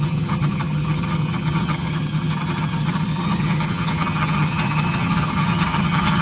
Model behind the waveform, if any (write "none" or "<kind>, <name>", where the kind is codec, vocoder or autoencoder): vocoder, HiFi-GAN